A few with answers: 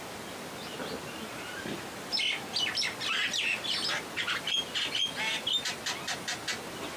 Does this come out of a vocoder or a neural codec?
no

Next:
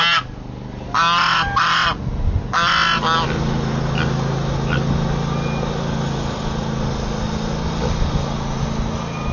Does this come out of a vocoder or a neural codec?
no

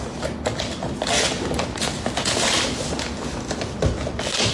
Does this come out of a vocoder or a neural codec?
no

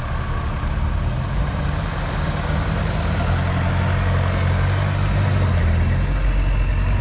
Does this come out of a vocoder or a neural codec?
no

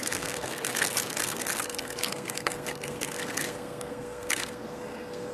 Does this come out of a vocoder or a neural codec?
yes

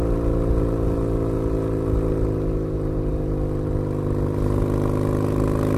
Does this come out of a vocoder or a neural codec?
no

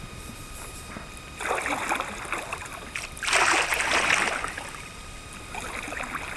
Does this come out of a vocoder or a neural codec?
no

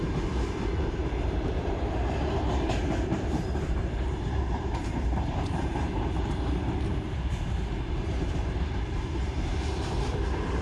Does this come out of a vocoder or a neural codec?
yes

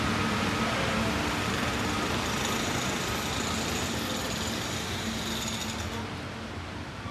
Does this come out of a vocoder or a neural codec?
no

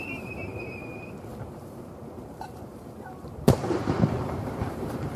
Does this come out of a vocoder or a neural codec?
yes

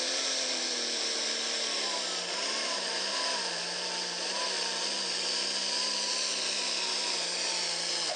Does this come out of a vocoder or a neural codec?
yes